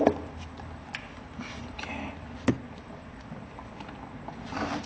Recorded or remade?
recorded